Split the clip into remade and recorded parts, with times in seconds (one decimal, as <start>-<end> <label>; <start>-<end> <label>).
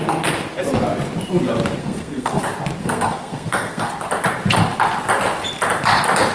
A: 0.0-1.8 recorded; 1.8-2.4 remade; 2.4-2.8 recorded; 2.8-3.9 remade; 3.9-6.3 recorded